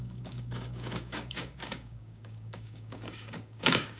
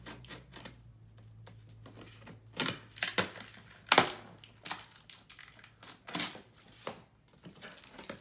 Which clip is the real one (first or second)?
second